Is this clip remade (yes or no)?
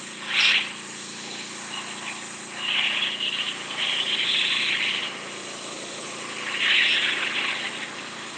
no